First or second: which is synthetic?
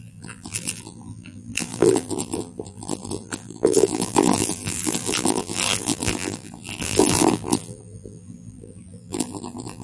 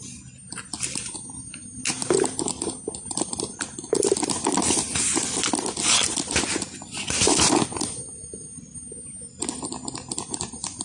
first